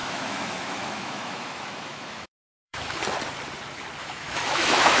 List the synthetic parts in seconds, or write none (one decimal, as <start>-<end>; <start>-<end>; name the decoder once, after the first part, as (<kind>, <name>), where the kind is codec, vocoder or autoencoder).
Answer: 0.0-3.0 (autoencoder, DAC-VAE); 4.0-5.0

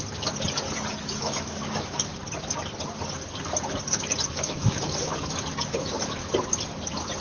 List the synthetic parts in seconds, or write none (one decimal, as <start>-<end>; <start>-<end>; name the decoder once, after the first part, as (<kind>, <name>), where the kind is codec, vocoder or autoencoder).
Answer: 1.0-2.1 (autoencoder, DAC-VAE); 4.3-5.1; 5.7-6.2

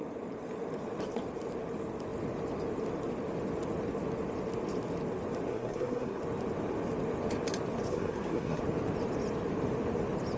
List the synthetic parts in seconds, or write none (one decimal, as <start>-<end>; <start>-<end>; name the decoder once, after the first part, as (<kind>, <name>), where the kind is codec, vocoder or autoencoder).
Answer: 5.5-6.2 (codec, SNAC); 7.9-8.6

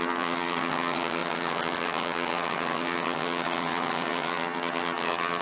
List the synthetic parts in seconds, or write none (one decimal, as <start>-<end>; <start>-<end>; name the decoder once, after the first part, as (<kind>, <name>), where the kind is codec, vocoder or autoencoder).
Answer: 0.0-5.4 (vocoder, HiFi-GAN)

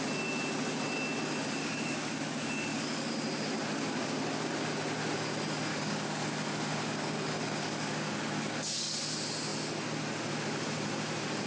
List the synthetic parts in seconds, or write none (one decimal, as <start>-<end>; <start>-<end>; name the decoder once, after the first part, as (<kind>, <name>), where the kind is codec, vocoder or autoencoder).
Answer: 1.6-3.1 (codec, DAC); 5.7-9.0

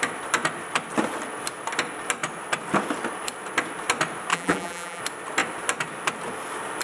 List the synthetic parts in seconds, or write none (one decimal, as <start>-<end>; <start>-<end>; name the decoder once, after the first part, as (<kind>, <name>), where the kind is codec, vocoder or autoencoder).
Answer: 4.3-5.0 (vocoder, BigVGAN v2)

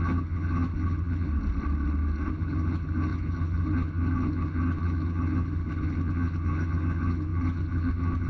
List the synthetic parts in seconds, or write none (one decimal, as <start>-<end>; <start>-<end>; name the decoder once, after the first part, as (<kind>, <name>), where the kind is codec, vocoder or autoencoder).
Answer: 0.0-1.3 (vocoder, HiFi-GAN); 2.3-8.3